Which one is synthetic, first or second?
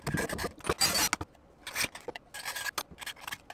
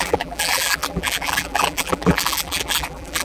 second